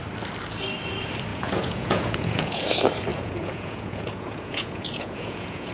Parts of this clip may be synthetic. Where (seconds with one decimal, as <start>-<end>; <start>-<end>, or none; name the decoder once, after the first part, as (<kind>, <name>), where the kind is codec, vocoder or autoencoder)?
1.3-2.6 (vocoder, Vocos); 3.1-5.7